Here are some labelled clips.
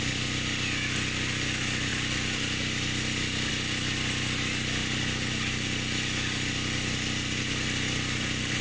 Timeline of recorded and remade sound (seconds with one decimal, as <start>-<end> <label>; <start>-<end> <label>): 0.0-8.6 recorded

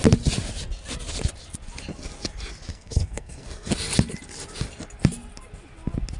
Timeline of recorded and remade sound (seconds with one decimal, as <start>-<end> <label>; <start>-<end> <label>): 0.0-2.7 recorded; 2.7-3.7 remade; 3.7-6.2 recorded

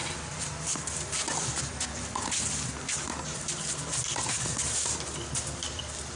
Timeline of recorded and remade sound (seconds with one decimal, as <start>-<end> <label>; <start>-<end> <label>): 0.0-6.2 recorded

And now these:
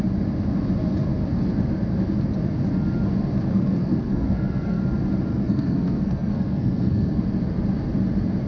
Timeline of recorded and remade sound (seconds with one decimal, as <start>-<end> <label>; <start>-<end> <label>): 0.0-3.5 recorded; 3.5-4.8 remade; 4.8-5.3 recorded; 5.3-7.2 remade; 7.2-8.5 recorded